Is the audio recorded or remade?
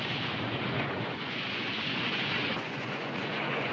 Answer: remade